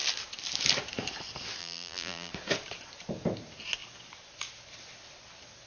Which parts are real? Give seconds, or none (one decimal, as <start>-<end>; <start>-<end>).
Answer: 0.0-1.6; 2.3-5.7